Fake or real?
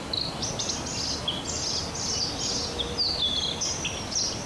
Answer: real